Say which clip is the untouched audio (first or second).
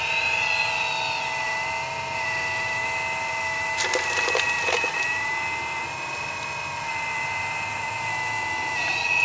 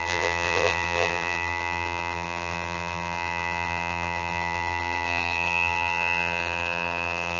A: first